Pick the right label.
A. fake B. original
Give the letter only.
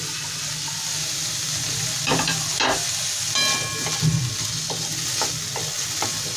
B